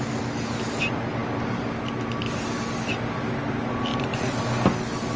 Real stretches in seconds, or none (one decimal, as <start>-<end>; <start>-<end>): 0.0-3.9; 4.4-5.2